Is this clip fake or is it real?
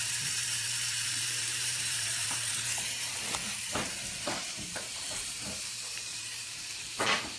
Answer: fake